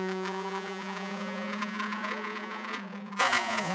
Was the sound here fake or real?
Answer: fake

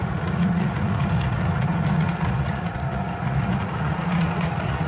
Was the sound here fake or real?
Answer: fake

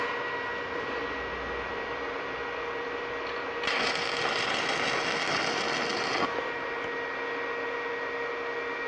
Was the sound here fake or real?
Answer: real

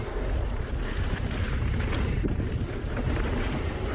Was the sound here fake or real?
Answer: real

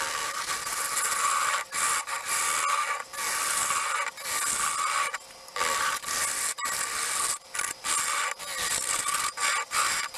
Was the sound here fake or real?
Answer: real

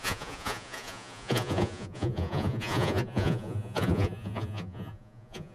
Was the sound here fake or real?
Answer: fake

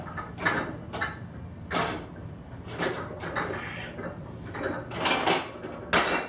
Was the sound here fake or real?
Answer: real